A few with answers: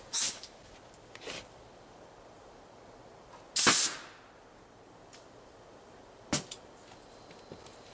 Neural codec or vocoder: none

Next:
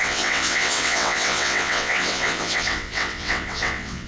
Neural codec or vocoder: vocoder, WaveNeXt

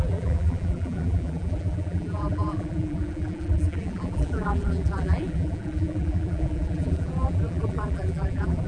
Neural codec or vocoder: vocoder, BigVGAN v2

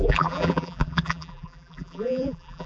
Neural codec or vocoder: vocoder, BigVGAN v2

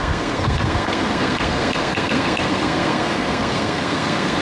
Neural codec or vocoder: codec, SNAC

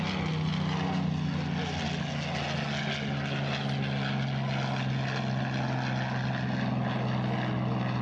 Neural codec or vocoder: none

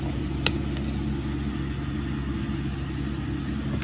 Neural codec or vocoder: none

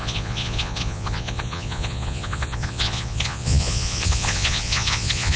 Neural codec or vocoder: vocoder, Vocos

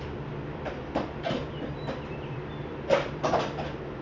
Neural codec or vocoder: vocoder, BigVGAN v2